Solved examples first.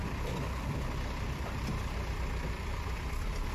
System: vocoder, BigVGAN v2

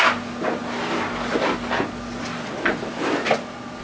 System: none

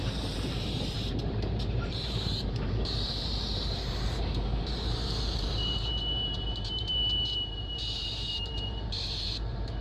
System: vocoder, BigVGAN v2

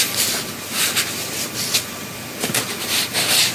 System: none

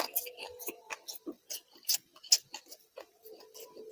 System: none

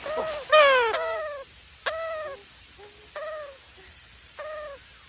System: none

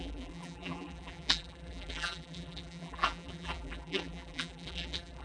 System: vocoder, BigVGAN v2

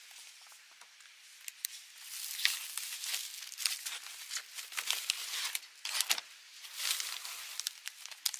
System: none